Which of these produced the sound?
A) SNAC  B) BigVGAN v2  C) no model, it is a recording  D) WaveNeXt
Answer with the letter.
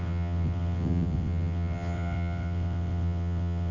D